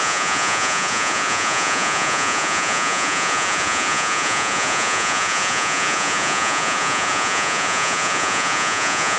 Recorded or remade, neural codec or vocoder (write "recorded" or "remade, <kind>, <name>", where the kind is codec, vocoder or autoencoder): remade, vocoder, Vocos